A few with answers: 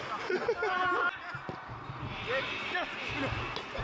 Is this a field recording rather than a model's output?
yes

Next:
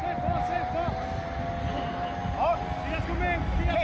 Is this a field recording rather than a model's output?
yes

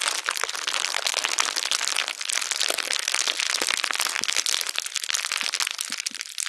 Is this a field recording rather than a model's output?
yes